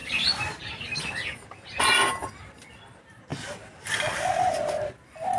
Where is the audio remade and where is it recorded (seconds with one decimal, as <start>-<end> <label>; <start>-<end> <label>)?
0.0-0.6 remade; 0.6-5.4 recorded